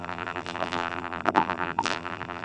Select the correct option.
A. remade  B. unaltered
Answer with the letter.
A